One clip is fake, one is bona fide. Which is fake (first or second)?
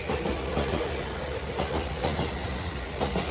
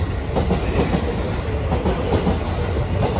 first